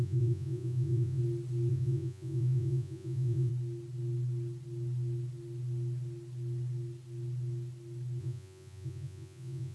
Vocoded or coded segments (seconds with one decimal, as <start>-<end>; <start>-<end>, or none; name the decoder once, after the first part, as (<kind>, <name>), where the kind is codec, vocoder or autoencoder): 0.0-1.2 (vocoder, Vocos); 1.7-3.5; 8.2-9.7